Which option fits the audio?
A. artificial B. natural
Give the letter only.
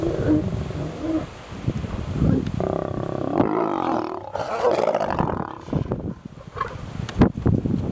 B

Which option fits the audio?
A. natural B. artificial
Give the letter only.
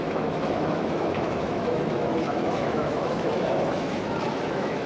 B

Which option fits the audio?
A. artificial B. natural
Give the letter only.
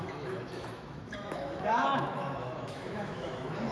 A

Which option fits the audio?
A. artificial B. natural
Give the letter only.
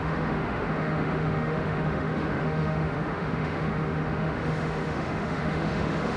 A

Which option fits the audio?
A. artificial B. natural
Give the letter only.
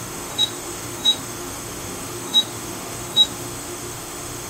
A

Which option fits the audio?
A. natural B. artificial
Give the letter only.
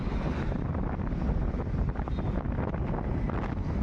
A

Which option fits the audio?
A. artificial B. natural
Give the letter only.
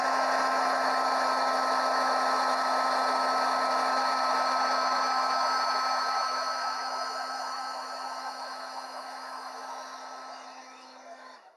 A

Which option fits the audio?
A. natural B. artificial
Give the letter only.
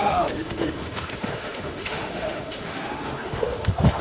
B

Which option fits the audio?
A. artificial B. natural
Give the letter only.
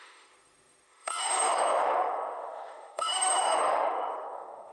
A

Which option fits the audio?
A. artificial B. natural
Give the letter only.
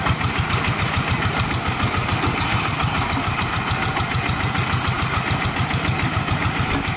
B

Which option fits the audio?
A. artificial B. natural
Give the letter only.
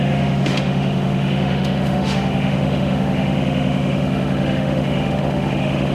A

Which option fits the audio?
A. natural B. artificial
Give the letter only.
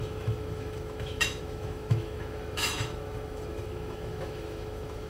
B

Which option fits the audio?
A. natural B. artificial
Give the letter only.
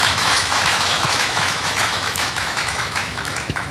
B